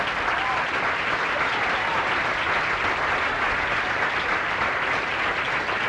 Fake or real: real